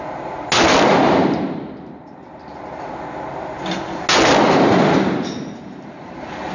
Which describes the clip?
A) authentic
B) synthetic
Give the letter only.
A